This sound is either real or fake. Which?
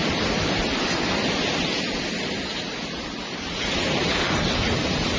real